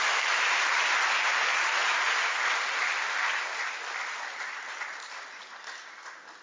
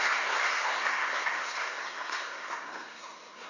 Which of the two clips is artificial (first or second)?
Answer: second